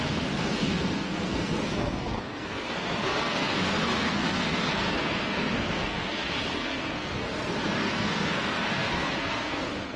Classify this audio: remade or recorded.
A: remade